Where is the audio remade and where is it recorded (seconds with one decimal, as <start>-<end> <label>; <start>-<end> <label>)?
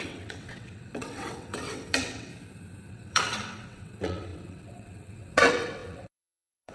0.0-2.3 remade; 2.3-2.9 recorded; 2.9-6.7 remade